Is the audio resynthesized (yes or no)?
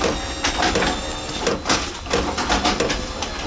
no